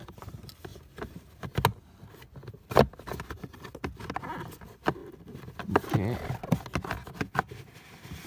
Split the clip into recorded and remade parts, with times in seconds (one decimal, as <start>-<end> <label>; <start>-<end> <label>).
0.0-8.3 recorded